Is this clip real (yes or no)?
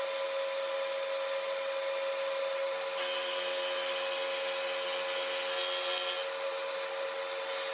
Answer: yes